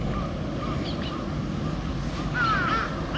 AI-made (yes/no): no